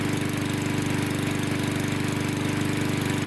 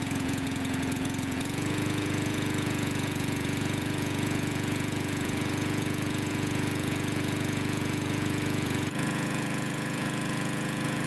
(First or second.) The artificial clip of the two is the second